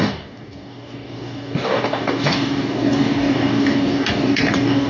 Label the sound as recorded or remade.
remade